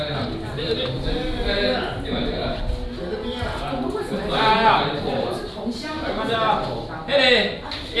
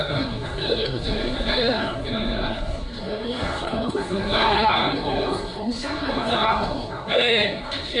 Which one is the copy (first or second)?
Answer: second